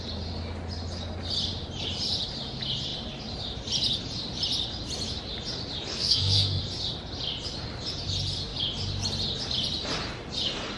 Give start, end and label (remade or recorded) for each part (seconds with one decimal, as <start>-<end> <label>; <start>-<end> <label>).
0.0-5.9 recorded; 5.9-6.6 remade; 6.6-10.8 recorded